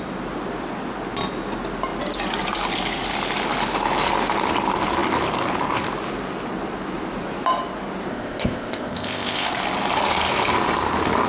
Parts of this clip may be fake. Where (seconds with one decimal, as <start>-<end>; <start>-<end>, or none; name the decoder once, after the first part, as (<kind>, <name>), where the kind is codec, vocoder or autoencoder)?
8.1-9.5 (codec, ZipCodec)